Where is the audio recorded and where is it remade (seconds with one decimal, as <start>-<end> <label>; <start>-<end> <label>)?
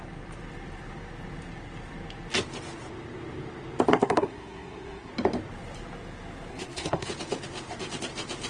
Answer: 0.0-3.9 recorded; 3.9-5.1 remade; 5.1-6.5 recorded; 6.5-7.1 remade; 7.1-8.5 recorded